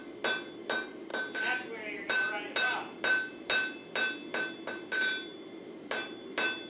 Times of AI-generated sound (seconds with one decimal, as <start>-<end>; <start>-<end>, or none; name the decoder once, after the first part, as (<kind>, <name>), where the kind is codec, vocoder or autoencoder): none